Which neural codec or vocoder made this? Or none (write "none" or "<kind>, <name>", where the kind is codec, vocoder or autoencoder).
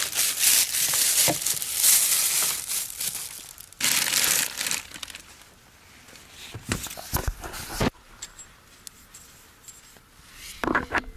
none